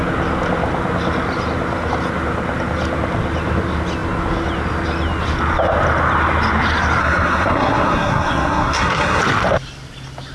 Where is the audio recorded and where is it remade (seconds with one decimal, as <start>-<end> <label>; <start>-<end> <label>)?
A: 0.0-7.0 recorded; 7.0-9.2 remade; 9.2-10.3 recorded